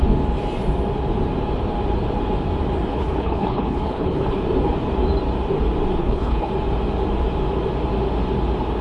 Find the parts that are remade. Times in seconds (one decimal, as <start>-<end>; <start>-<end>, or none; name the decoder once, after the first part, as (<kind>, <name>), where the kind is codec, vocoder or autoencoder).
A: 2.9-4.4 (codec, HILCodec); 6.0-6.5